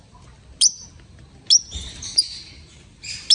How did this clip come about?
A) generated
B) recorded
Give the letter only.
B